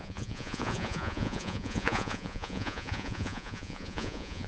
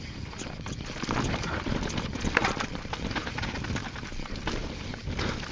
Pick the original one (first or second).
second